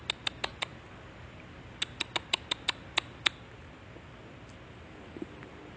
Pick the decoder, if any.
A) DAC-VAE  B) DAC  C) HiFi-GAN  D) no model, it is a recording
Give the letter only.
D